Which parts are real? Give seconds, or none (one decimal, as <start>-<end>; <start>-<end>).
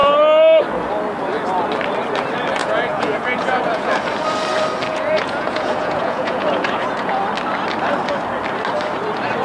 0.0-2.6; 3.9-4.9; 7.2-9.4